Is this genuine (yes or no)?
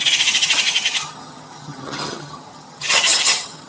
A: no